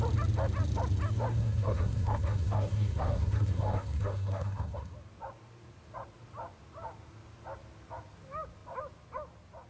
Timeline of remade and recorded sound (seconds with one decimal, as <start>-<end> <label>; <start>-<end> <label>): 0.0-1.3 recorded; 1.3-4.9 remade; 4.9-9.7 recorded

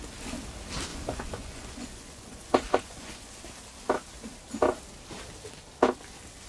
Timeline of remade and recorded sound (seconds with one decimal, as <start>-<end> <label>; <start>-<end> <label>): 0.0-0.9 recorded; 0.9-3.4 remade; 3.4-6.5 recorded

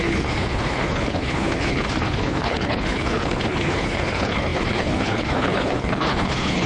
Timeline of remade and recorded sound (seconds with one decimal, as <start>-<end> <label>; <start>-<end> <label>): 0.0-6.7 remade

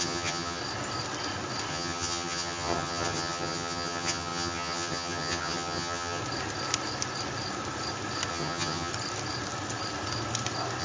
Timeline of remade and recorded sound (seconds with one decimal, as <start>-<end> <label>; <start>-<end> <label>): 0.0-0.6 remade; 0.6-1.7 recorded; 1.7-6.2 remade; 6.2-8.3 recorded; 8.3-8.9 remade; 8.9-10.8 recorded